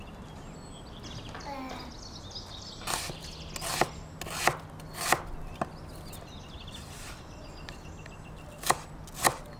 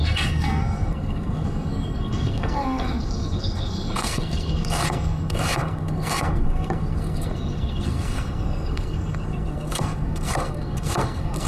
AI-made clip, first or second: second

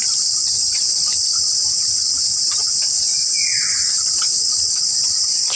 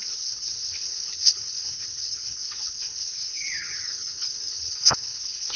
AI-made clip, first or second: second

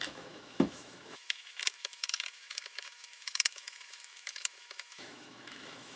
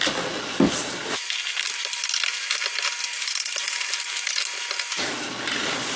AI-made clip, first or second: first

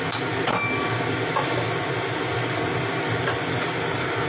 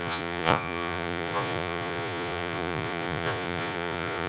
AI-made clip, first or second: second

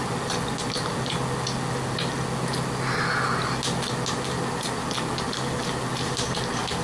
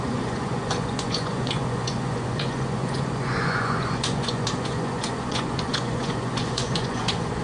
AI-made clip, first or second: second